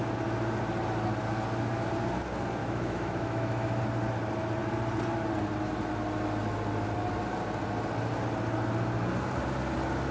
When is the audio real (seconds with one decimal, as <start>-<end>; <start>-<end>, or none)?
0.0-2.6; 3.8-10.1